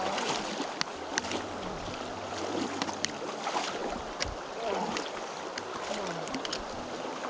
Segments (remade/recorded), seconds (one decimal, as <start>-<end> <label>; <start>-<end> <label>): 0.0-1.1 recorded; 1.1-2.4 remade; 2.4-3.8 recorded; 3.8-5.5 remade; 5.5-7.3 recorded